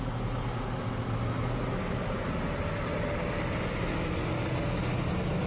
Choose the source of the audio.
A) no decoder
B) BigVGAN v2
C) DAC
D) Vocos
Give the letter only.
A